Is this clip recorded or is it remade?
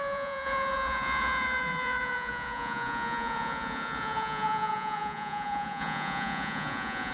remade